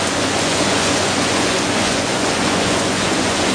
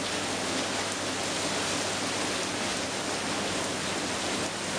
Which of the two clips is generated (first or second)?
first